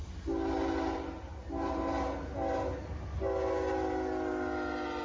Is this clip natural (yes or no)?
yes